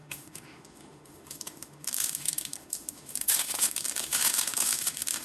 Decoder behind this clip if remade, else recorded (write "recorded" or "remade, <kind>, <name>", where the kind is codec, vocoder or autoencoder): remade, autoencoder, DAC-VAE